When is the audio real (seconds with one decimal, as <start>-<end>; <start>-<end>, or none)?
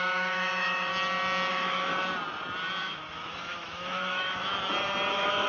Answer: 0.9-1.5; 1.9-2.8; 4.5-5.1